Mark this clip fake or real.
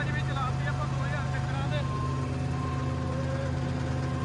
real